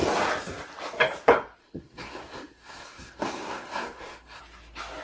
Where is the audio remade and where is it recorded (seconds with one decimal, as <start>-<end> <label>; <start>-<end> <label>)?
0.0-1.6 recorded; 1.6-4.4 remade; 4.4-5.0 recorded